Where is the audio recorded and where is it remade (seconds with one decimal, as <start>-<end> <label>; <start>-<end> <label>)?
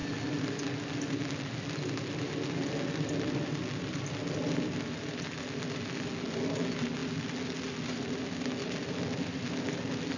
0.0-10.2 recorded